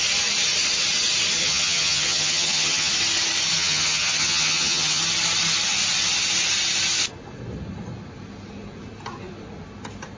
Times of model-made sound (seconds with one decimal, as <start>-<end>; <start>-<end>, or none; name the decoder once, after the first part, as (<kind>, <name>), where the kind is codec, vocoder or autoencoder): 1.4-2.9 (vocoder, HiFi-GAN); 3.6-5.0